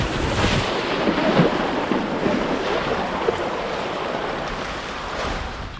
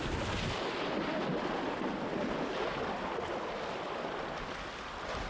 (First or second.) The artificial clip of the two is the first